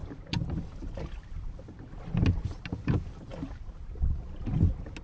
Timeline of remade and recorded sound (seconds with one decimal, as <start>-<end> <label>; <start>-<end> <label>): 0.0-5.0 recorded